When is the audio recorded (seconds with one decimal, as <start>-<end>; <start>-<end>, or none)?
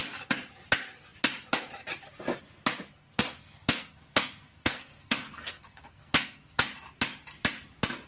0.0-2.9; 6.7-8.1